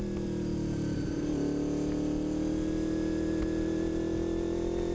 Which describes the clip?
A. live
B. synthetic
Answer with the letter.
A